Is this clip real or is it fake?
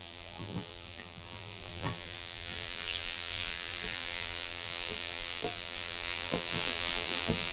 fake